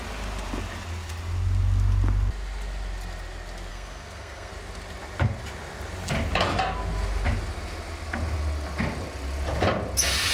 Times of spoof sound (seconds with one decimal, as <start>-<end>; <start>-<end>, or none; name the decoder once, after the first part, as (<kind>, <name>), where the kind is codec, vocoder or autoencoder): 3.7-4.5 (codec, SNAC)